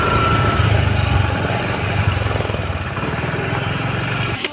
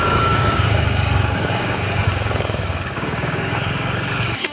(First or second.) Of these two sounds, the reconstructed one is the second